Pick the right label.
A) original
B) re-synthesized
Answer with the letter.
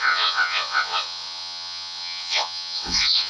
B